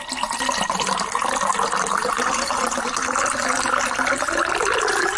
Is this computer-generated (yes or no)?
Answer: no